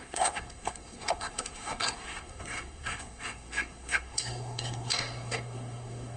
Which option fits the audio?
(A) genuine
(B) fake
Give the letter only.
B